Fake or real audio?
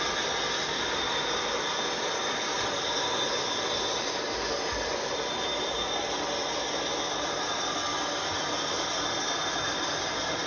real